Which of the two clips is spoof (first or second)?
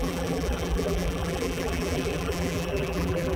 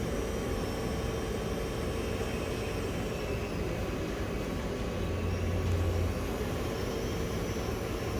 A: first